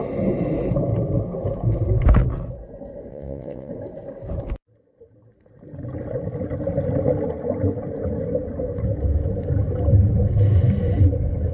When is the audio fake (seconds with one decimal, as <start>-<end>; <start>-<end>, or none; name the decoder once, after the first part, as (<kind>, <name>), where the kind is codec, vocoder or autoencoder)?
3.1-3.7 (vocoder, WaveNeXt)